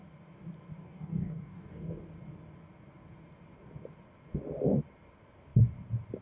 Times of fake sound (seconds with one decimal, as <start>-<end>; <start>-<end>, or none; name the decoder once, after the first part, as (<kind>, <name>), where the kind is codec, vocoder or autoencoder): 0.8-2.0 (codec, DAC)